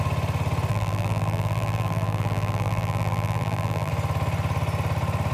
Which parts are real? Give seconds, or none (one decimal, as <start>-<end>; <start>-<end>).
0.0-0.7; 3.9-5.3